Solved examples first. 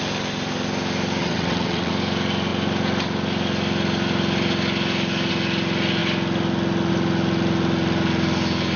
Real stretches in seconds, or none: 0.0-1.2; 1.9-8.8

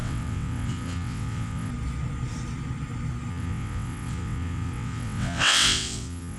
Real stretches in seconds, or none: 1.7-3.3

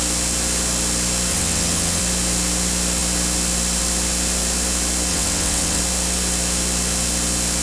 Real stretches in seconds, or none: 0.0-1.3; 2.0-5.1; 5.8-7.6

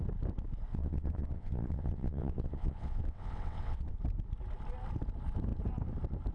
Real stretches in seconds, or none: 0.0-0.7; 3.9-6.3

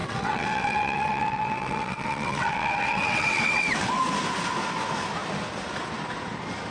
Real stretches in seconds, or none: 4.0-6.7

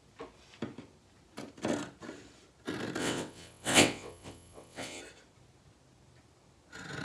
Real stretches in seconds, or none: 0.0-3.0; 5.0-7.0